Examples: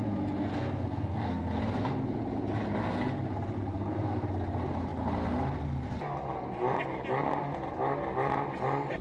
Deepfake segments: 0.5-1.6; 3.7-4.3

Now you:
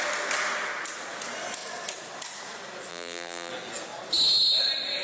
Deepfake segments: 2.9-3.5

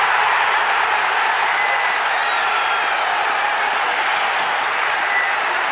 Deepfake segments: none

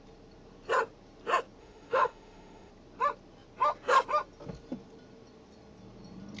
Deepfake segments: 1.6-2.7

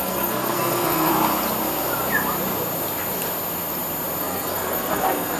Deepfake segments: 0.0-1.1; 4.2-5.4

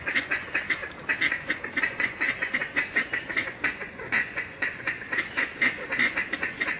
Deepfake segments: 0.0-0.8; 1.3-6.8

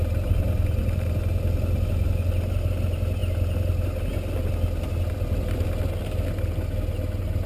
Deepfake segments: none